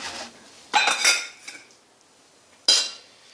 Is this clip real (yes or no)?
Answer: yes